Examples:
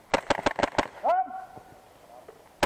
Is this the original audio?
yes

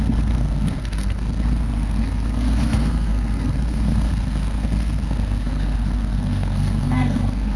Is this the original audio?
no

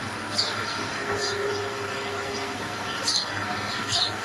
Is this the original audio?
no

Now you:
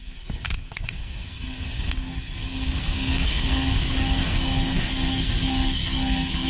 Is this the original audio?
no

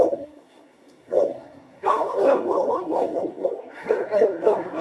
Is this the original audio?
no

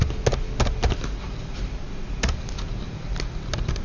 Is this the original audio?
yes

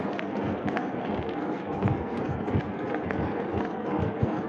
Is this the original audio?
no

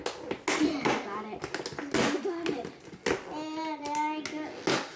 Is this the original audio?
yes